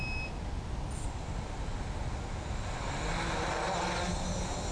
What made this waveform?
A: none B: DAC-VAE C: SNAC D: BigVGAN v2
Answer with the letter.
A